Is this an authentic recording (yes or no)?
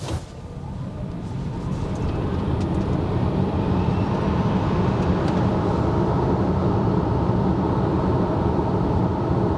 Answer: no